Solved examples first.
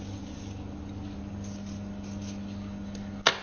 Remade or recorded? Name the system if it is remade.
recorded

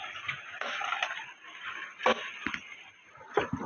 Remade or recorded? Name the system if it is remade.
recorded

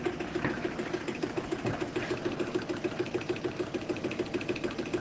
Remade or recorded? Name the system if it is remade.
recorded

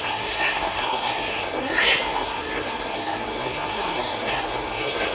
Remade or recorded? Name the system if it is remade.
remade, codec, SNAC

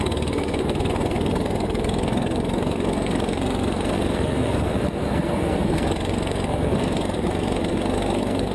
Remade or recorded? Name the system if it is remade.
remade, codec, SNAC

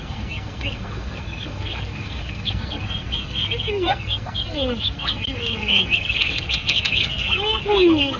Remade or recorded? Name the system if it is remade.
remade, codec, SNAC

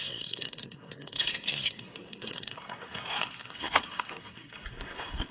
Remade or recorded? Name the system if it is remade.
remade, codec, SNAC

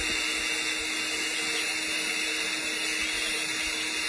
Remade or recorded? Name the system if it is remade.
recorded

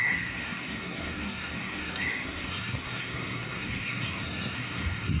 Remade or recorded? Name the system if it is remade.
remade, codec, SNAC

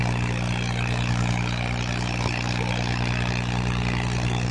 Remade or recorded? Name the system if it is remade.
recorded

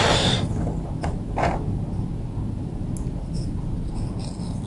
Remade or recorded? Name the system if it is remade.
recorded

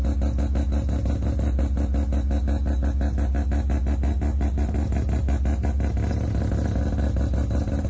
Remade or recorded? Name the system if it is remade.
recorded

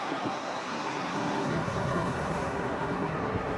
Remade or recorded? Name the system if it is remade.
remade, codec, SNAC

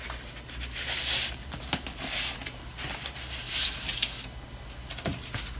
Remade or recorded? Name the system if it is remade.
recorded